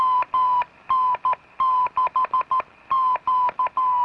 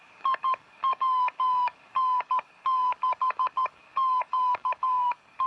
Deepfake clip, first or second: second